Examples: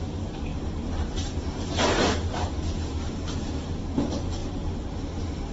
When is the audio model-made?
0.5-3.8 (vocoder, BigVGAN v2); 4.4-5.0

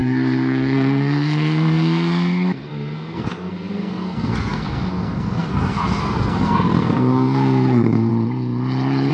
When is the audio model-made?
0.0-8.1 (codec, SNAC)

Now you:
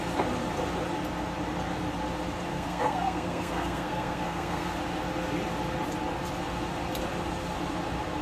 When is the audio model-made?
2.5-4.7 (codec, SNAC)

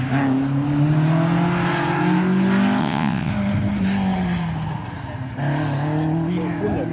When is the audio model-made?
2.8-3.3 (vocoder, WaveNeXt)

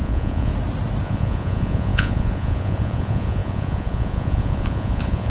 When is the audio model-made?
0.0-0.5 (vocoder, Vocos); 1.0-5.3